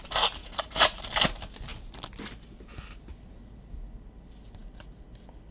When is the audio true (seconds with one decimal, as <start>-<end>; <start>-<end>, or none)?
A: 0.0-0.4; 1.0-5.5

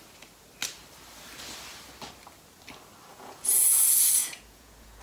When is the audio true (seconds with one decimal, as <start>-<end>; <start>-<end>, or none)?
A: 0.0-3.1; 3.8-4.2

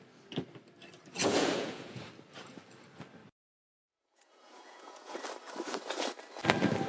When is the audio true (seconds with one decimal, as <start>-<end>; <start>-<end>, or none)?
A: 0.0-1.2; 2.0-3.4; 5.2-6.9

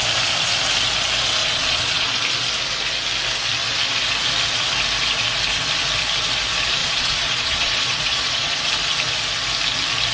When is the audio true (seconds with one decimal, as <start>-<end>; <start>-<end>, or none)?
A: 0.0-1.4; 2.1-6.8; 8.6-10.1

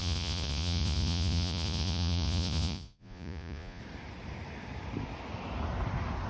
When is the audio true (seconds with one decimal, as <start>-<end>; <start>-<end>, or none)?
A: 3.8-6.3

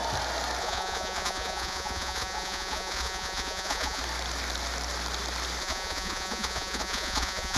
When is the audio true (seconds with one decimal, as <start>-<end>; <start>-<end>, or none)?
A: 0.0-0.6; 4.0-5.6

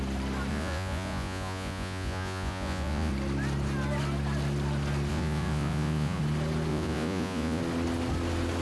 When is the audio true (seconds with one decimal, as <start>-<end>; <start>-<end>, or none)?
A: 0.0-0.5; 3.1-5.1; 6.2-6.7; 7.6-8.6